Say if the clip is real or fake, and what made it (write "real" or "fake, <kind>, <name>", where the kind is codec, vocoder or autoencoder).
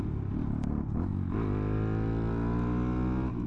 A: real